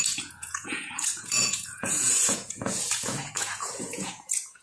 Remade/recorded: remade